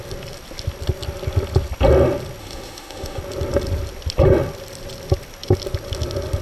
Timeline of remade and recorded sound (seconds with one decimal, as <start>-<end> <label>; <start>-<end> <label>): 0.0-2.4 recorded; 2.4-3.2 remade; 3.2-6.4 recorded